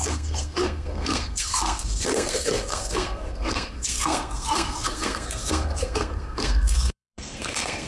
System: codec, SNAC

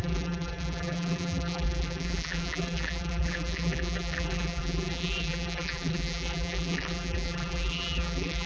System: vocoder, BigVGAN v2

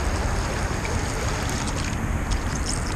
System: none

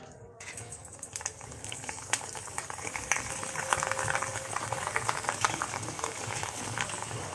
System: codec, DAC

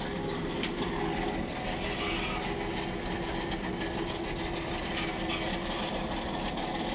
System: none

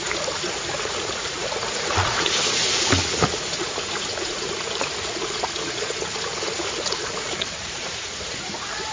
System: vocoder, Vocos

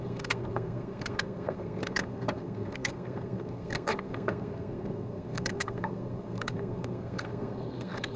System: codec, SNAC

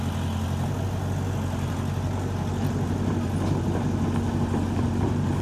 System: none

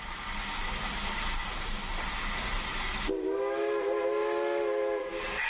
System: none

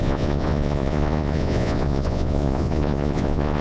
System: vocoder, Vocos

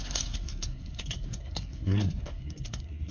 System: codec, SNAC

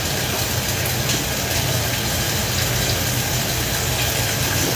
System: none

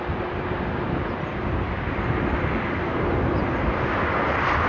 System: none